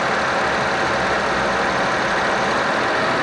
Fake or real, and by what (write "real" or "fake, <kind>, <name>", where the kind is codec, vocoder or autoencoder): real